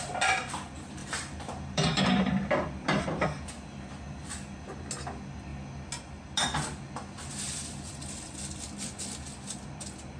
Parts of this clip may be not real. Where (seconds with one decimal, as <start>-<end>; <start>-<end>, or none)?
1.0-3.5